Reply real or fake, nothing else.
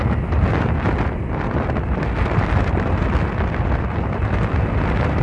real